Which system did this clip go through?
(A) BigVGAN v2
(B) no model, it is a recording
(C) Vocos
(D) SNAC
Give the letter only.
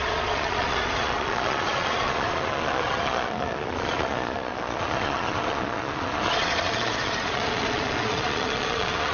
C